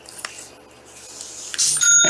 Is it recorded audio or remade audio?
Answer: recorded